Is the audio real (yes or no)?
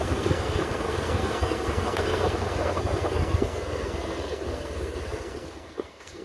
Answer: no